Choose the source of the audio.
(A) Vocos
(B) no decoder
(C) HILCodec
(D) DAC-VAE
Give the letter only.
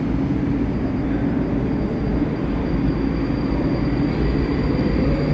B